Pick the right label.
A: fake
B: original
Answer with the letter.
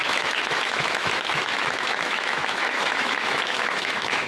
A